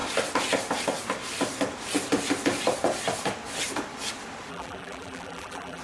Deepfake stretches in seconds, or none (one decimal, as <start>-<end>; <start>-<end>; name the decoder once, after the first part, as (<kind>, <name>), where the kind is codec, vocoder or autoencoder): 4.5-5.8 (vocoder, BigVGAN v2)